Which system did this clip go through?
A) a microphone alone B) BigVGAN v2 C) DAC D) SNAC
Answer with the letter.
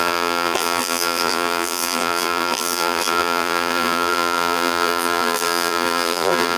B